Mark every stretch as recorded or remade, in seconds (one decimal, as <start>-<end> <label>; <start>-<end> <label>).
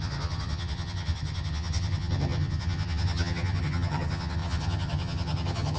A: 0.0-5.8 remade